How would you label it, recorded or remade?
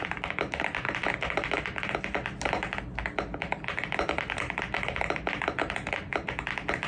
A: recorded